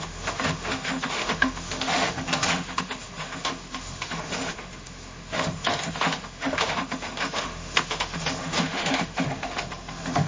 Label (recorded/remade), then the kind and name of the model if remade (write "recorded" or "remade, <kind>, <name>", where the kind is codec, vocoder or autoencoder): remade, autoencoder, DAC-VAE